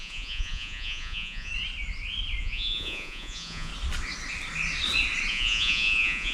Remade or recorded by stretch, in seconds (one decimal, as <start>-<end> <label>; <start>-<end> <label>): 0.0-1.5 remade; 1.5-2.4 recorded; 2.4-3.7 remade; 3.7-5.3 recorded; 5.3-6.3 remade